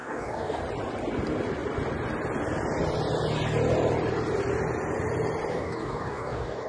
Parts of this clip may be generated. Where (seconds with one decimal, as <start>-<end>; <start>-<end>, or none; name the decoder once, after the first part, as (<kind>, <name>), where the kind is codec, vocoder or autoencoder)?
0.0-0.6 (codec, DAC); 5.5-6.7